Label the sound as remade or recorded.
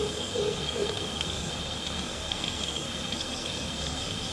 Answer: remade